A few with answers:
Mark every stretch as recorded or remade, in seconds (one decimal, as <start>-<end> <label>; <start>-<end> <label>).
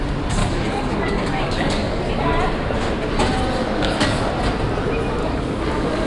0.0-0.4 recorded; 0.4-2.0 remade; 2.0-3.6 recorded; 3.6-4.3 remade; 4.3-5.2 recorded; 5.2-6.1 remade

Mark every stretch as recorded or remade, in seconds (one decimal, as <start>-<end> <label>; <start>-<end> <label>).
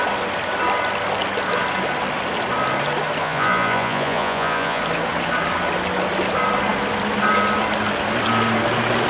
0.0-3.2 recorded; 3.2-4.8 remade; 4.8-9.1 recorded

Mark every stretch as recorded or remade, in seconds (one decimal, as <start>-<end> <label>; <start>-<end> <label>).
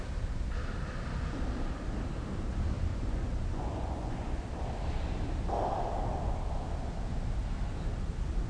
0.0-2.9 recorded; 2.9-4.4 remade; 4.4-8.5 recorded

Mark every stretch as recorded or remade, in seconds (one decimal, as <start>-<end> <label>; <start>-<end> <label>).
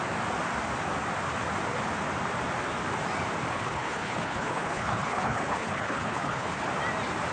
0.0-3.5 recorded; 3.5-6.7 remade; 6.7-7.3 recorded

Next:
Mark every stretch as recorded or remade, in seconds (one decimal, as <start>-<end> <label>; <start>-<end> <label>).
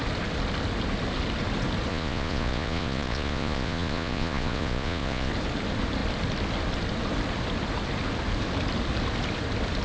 0.0-1.9 recorded; 1.9-5.3 remade; 5.3-9.8 recorded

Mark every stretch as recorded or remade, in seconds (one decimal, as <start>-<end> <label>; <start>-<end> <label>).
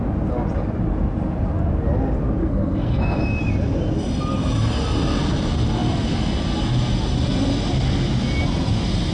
0.0-2.4 recorded; 2.4-3.0 remade; 3.0-9.1 recorded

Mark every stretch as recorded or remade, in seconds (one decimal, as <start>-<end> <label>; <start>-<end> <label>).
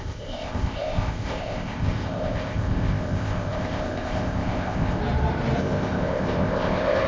0.0-5.0 remade; 5.0-5.6 recorded; 5.6-7.1 remade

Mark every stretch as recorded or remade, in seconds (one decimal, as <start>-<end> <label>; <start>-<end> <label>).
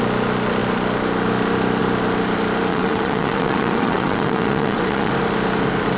0.0-2.7 recorded; 2.7-5.1 remade; 5.1-6.0 recorded